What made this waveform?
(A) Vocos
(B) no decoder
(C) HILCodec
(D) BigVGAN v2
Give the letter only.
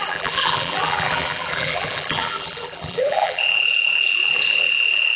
D